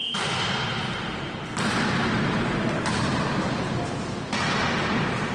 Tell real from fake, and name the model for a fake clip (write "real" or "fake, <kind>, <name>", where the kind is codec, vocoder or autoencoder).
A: real